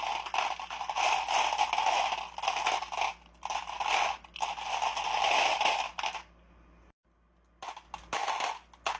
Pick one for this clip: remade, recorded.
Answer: recorded